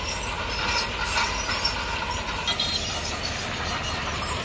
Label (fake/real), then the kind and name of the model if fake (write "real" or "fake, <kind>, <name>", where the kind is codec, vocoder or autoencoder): real